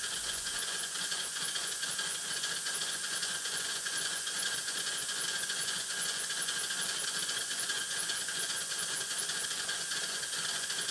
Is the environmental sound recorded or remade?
remade